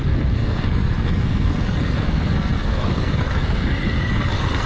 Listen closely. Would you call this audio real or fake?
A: fake